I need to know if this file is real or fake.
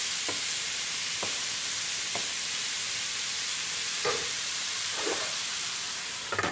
fake